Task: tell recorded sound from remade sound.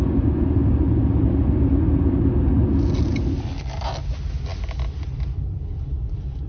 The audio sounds recorded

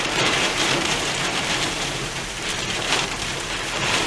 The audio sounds remade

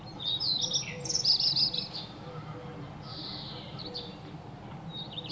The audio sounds recorded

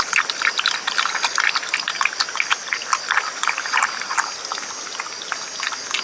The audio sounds recorded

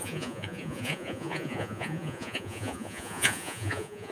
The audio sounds remade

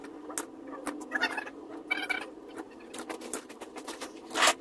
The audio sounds recorded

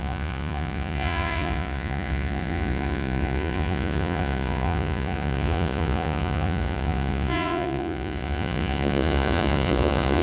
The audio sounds remade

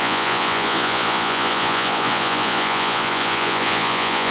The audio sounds remade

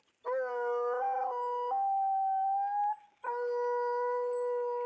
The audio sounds recorded